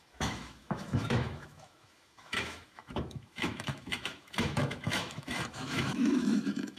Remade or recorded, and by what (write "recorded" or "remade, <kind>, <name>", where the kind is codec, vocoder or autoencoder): remade, autoencoder, DAC-VAE